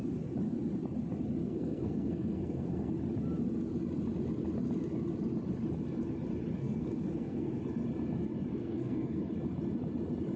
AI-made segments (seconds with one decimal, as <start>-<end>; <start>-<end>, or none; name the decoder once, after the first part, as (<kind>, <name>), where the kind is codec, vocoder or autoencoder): 1.4-2.9 (codec, SNAC); 6.6-7.6; 8.5-9.2